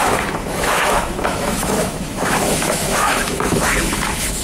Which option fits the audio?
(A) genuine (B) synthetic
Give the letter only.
B